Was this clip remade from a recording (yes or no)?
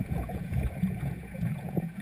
yes